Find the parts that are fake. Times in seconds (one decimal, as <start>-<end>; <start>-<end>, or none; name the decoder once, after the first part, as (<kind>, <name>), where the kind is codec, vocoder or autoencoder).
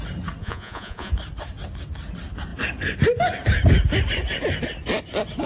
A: 0.4-1.1 (vocoder, Vocos)